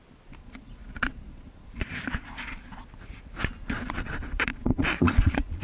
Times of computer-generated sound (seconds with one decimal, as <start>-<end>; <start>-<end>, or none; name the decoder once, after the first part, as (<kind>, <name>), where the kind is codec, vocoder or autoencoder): 0.4-1.9 (vocoder, Vocos); 3.6-5.6